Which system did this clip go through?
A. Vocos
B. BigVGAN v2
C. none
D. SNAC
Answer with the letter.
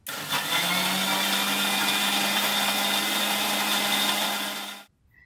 C